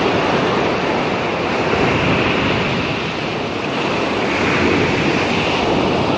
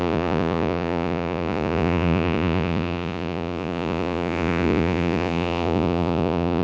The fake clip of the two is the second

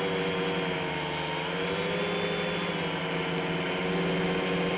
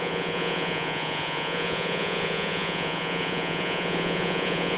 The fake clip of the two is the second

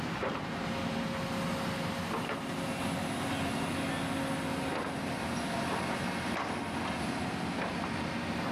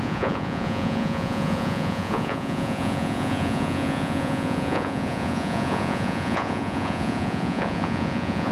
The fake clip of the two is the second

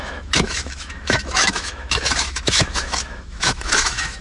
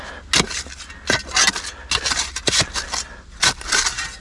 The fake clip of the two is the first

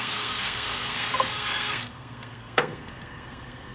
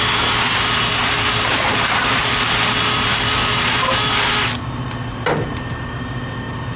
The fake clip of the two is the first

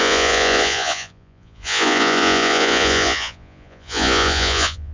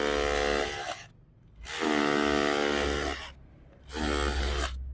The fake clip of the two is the first